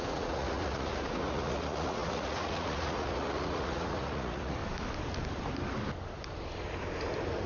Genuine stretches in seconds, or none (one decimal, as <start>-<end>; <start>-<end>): 4.6-7.5